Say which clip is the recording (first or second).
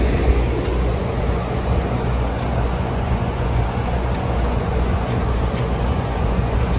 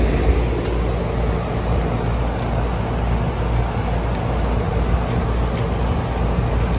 second